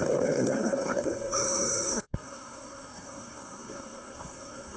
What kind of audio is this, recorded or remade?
remade